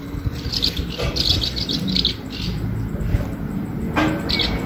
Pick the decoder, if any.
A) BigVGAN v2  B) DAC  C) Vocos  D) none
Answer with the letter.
D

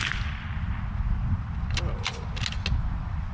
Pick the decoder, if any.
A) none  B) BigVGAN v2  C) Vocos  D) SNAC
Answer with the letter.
A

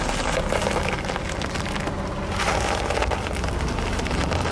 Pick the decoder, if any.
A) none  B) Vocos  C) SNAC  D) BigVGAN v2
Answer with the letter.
A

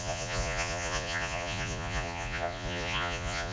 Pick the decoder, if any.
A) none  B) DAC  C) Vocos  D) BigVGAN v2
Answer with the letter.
C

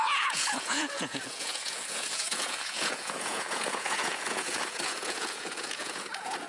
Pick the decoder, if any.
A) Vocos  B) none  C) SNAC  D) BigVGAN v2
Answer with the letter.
A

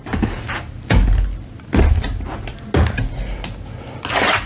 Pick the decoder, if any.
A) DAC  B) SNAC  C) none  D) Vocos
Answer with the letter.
C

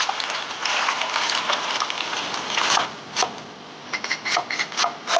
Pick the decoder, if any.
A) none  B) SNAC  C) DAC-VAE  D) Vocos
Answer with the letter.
A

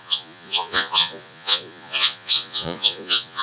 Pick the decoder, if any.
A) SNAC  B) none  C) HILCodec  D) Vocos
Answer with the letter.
D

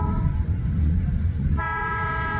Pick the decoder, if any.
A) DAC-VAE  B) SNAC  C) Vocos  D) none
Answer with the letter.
C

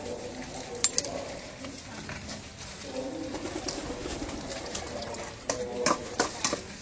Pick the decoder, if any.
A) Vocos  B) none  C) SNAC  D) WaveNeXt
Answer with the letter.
B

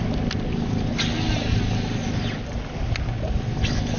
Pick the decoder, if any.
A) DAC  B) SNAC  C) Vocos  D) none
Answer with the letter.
D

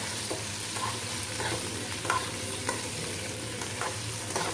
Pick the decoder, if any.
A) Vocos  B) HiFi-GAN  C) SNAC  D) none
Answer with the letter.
D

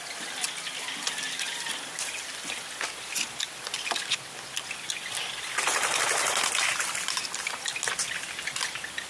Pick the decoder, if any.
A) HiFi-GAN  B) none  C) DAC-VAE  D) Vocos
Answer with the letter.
B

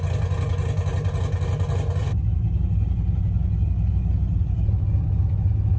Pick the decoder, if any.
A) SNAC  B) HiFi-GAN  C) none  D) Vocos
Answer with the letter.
C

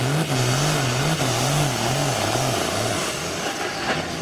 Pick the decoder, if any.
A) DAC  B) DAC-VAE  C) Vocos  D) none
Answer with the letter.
D